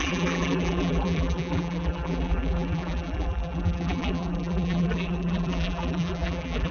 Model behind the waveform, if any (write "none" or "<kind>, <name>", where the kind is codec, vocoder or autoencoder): vocoder, BigVGAN v2